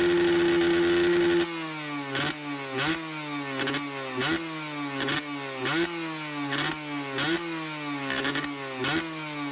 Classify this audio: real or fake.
real